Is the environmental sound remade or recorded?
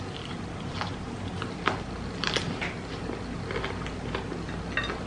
recorded